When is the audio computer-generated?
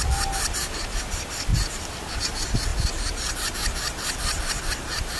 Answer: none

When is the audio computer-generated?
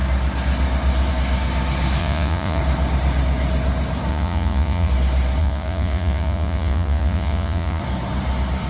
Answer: 2.0-2.6 (vocoder, Vocos); 4.1-4.9; 5.4-7.8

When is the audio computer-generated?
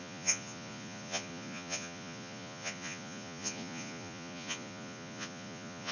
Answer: 0.0-5.9 (vocoder, Vocos)